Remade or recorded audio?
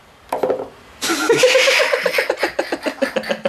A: recorded